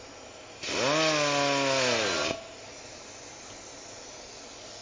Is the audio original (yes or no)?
yes